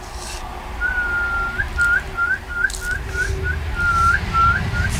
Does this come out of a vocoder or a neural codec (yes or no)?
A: no